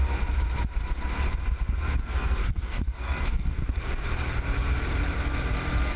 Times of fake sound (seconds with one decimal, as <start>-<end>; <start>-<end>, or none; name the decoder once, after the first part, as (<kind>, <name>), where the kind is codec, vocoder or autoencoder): 2.0-3.6 (codec, SNAC)